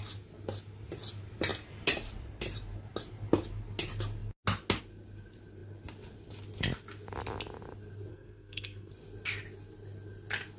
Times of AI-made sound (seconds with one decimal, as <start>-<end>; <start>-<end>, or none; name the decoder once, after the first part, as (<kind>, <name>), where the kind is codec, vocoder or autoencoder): 8.1-8.9 (codec, SNAC)